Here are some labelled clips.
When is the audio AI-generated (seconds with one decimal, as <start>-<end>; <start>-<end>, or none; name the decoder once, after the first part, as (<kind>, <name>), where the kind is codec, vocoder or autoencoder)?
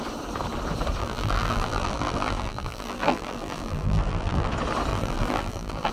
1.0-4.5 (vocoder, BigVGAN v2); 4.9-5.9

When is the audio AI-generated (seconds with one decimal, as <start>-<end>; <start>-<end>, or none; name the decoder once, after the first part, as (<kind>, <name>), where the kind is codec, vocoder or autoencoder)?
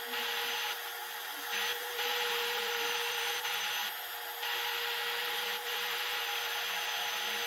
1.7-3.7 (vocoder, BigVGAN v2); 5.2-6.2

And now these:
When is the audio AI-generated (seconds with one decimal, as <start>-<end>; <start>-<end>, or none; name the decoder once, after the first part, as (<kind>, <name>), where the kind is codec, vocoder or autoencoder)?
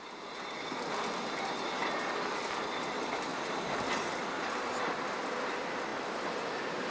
3.3-4.1 (vocoder, BigVGAN v2)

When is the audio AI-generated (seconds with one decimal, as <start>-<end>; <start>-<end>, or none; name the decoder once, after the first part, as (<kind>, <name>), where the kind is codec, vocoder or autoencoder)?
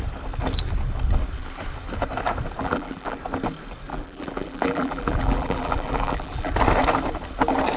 2.6-3.2 (vocoder, BigVGAN v2); 3.9-6.5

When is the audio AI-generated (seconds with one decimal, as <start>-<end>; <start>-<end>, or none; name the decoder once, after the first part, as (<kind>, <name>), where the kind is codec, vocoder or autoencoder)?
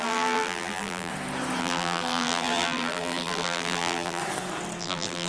0.0-1.1 (vocoder, BigVGAN v2); 1.6-4.2; 4.8-5.3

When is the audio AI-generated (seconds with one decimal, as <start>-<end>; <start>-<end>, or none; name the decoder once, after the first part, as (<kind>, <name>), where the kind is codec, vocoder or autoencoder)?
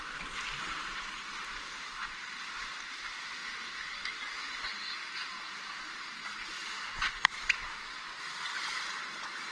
1.4-2.6 (vocoder, BigVGAN v2); 6.6-7.1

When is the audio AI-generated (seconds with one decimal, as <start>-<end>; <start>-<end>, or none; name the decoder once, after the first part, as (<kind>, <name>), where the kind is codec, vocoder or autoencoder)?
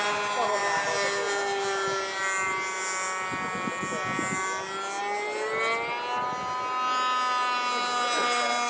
none